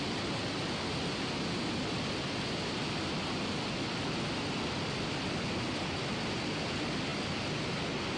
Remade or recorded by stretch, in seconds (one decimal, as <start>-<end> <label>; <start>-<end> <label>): 0.0-8.2 recorded